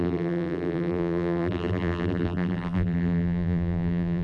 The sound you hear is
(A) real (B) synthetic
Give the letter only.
B